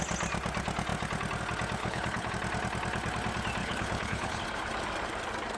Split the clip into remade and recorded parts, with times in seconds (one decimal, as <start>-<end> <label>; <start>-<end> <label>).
0.0-1.8 recorded; 1.8-2.3 remade; 2.3-3.6 recorded; 3.6-4.4 remade; 4.4-5.6 recorded